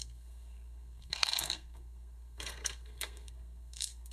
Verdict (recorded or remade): remade